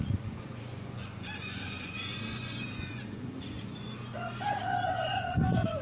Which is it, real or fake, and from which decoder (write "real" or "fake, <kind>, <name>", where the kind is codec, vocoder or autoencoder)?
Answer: fake, vocoder, Vocos